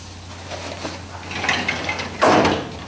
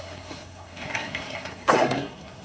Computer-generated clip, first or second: second